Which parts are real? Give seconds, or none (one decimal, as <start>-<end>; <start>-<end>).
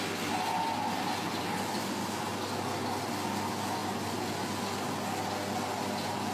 0.0-6.3